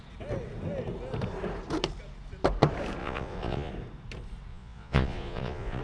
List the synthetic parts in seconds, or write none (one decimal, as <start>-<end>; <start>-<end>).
3.0-3.7; 4.5-5.8